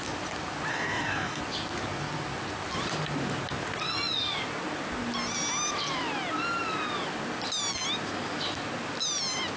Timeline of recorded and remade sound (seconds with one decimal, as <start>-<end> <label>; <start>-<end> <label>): 0.0-0.7 recorded; 0.7-1.4 remade; 1.4-9.6 recorded